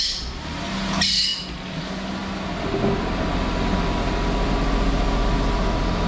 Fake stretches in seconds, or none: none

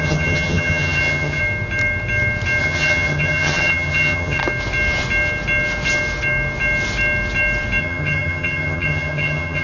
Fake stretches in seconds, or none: 0.0-1.4 (vocoder, HiFi-GAN); 2.6-4.4; 7.8-9.6